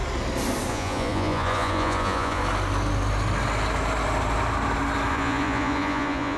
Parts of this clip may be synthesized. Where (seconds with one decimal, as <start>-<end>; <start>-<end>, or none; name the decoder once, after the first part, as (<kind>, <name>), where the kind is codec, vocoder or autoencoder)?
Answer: 0.7-2.4 (vocoder, Vocos); 5.1-6.4